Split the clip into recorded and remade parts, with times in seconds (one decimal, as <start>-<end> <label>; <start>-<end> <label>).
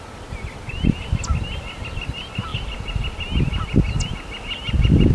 0.0-5.1 recorded